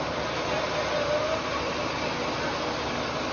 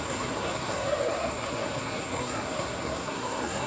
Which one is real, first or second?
first